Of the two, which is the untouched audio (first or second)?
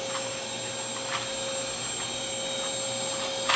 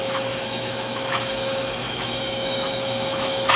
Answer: first